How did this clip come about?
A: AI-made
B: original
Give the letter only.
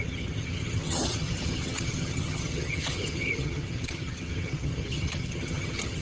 A